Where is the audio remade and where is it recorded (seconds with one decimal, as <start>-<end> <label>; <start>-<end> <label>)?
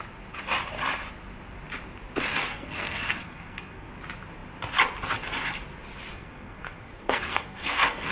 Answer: 0.0-2.5 recorded; 2.5-3.9 remade; 3.9-6.1 recorded; 6.1-8.1 remade